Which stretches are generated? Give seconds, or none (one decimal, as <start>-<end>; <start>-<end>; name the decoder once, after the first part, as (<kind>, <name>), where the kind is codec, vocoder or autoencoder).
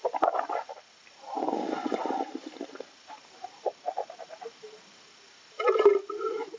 none